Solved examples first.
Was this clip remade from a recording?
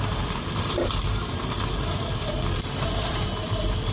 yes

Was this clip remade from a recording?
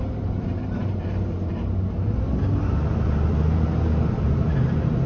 yes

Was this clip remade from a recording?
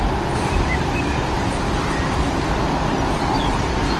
yes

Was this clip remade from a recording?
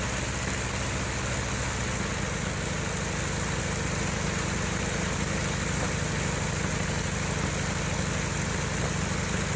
no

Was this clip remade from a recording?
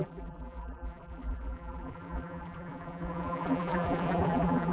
yes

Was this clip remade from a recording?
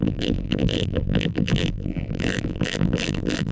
yes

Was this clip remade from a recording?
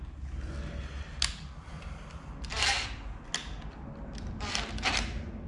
no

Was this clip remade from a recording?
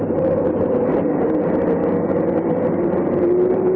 yes